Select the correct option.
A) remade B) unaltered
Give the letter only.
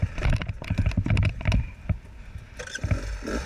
B